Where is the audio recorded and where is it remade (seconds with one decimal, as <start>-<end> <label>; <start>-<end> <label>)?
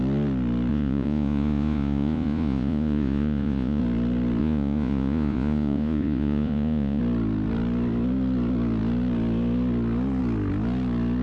0.0-0.7 recorded; 0.7-3.8 remade; 3.8-4.4 recorded; 4.4-7.0 remade; 7.0-11.2 recorded